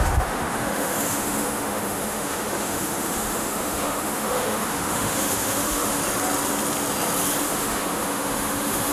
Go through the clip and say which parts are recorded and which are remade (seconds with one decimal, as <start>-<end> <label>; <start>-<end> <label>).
0.0-6.0 remade; 6.0-7.4 recorded; 7.4-8.9 remade